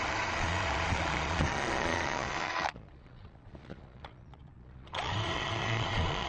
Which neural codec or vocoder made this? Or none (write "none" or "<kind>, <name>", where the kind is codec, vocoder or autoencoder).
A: vocoder, Vocos